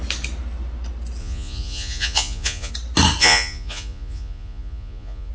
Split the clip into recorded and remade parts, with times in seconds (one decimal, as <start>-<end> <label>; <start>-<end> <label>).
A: 0.0-1.2 recorded; 1.2-2.7 remade; 2.7-3.2 recorded; 3.2-5.3 remade